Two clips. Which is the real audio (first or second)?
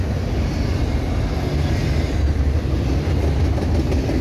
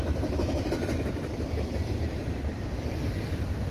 first